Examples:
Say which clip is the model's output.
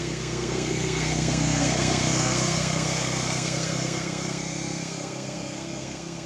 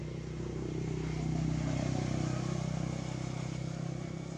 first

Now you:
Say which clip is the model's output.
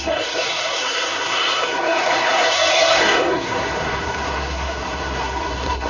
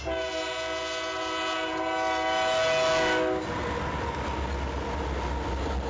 first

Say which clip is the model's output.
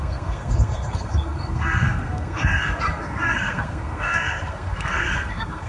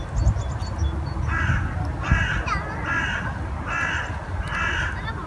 first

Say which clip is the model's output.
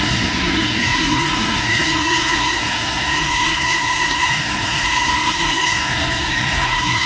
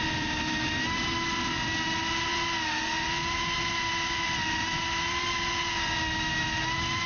first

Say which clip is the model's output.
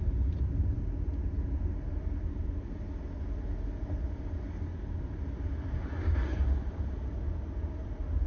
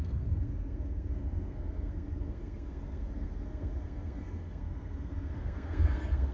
second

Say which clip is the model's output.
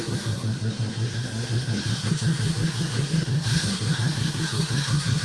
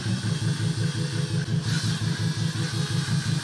first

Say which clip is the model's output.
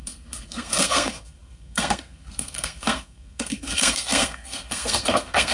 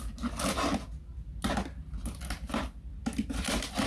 first